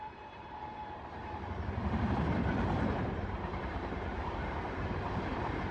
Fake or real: fake